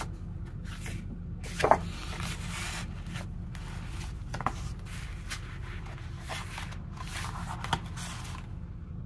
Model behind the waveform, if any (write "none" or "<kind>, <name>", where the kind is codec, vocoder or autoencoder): none